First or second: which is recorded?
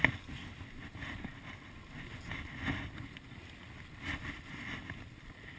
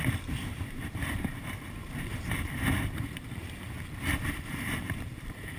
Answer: first